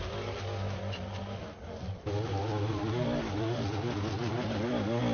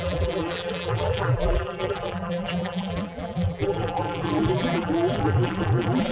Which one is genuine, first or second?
first